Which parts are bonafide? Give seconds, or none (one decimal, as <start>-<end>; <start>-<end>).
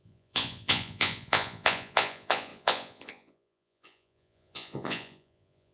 none